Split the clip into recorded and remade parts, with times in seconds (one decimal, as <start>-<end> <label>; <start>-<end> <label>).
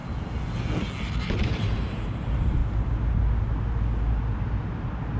0.0-1.0 recorded; 1.0-2.6 remade; 2.6-5.2 recorded